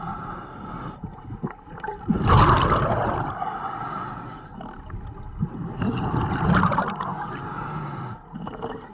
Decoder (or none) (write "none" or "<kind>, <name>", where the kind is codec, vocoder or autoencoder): none